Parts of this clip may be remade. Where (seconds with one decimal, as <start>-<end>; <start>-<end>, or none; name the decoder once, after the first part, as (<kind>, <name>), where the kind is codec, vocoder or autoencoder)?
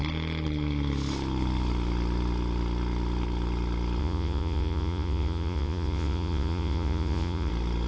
4.0-7.5 (vocoder, Vocos)